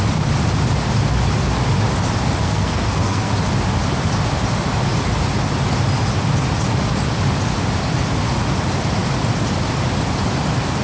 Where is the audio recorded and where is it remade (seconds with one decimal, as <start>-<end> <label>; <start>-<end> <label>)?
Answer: 0.0-2.4 recorded; 2.4-3.3 remade; 3.3-10.8 recorded